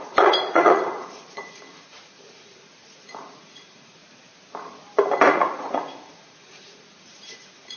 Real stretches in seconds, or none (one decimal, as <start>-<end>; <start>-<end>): 4.0-5.3